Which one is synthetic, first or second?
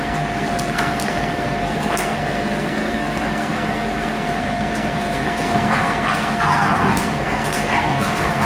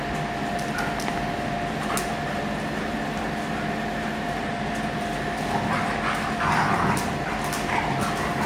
first